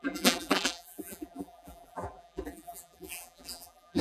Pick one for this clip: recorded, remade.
remade